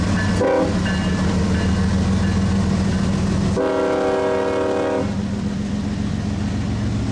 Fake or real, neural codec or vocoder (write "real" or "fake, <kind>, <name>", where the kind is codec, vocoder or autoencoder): real